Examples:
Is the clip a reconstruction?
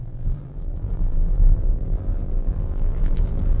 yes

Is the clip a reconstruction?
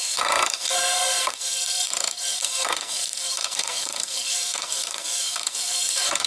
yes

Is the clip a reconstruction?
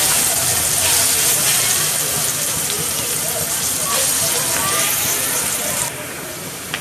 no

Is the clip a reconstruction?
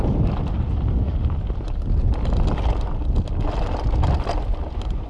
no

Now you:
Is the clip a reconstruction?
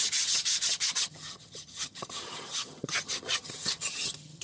yes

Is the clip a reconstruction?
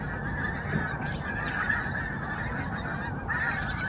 no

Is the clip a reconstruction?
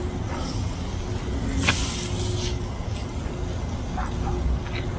no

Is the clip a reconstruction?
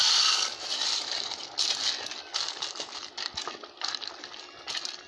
no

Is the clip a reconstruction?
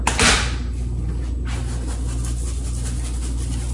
no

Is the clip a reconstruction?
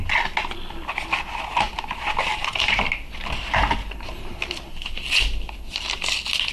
no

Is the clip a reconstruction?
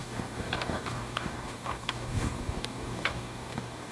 yes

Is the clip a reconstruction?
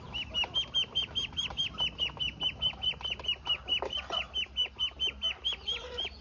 no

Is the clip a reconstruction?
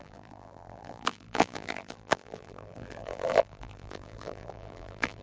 yes